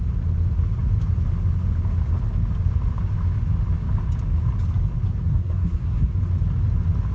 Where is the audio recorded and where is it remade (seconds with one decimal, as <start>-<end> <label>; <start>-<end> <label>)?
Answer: 0.0-5.2 recorded; 5.2-6.2 remade; 6.2-7.1 recorded

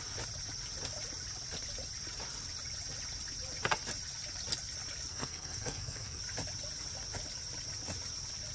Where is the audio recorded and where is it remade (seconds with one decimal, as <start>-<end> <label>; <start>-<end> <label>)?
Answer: 0.0-5.1 recorded; 5.1-6.2 remade; 6.2-8.5 recorded